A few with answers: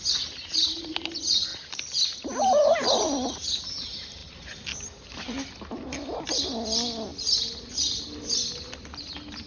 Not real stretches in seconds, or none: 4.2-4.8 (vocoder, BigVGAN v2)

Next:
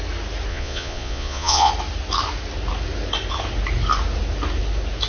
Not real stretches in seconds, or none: 0.5-1.7 (vocoder, Vocos)

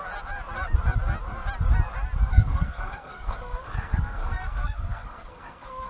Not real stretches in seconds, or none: 2.3-5.9 (codec, SNAC)

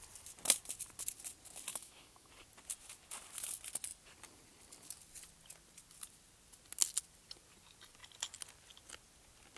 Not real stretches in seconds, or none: 1.7-2.3 (autoencoder, DAC-VAE)